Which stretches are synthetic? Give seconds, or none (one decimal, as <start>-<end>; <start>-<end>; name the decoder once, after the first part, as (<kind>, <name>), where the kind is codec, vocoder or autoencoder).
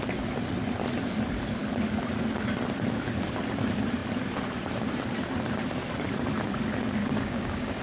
7.0-7.8 (codec, DAC)